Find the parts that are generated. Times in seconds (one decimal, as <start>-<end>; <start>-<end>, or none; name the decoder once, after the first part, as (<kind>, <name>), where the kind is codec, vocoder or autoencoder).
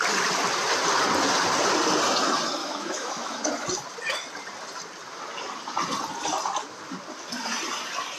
2.6-3.5 (autoencoder, DAC-VAE)